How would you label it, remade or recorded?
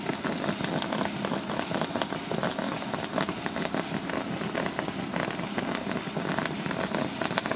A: recorded